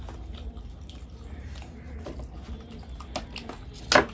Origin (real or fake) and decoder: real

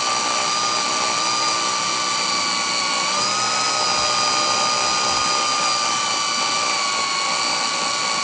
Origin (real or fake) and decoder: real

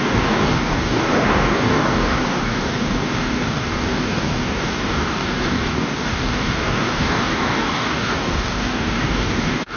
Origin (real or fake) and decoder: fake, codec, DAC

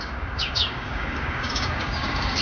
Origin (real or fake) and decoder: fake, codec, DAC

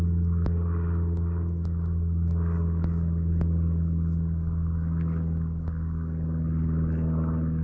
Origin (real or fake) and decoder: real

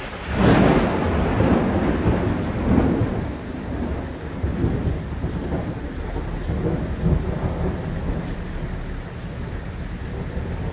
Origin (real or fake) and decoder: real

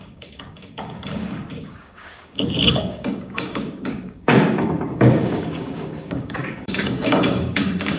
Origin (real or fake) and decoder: fake, codec, DAC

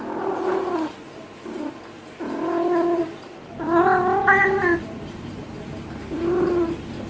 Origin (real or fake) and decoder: real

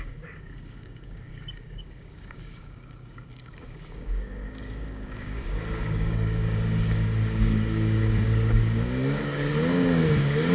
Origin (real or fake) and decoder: fake, codec, DAC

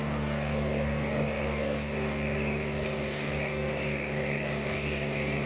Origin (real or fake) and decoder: fake, codec, DAC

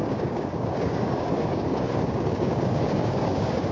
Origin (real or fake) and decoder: fake, codec, DAC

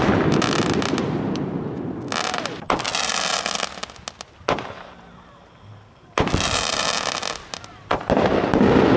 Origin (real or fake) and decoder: real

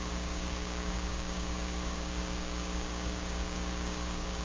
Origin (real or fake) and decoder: fake, codec, DAC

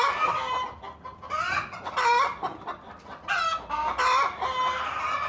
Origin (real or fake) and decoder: real